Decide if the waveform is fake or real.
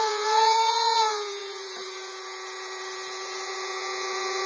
fake